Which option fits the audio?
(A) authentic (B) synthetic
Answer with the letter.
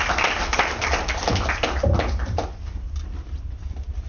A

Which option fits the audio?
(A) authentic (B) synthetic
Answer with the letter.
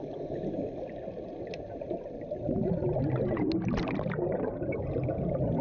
A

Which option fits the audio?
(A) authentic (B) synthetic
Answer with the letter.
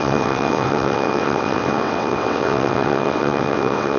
B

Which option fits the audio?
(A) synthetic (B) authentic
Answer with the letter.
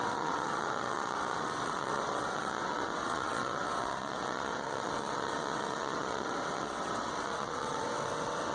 A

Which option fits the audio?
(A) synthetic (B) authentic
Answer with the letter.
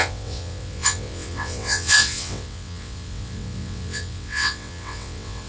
A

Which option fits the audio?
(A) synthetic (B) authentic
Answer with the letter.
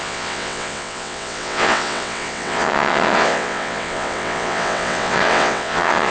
A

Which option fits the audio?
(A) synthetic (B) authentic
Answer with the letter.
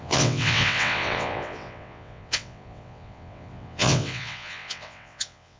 A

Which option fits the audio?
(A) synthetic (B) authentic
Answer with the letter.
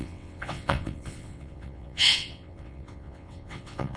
A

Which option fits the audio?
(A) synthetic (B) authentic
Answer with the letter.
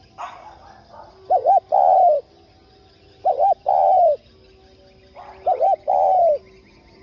B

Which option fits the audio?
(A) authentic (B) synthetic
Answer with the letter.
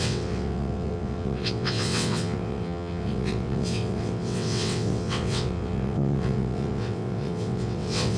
B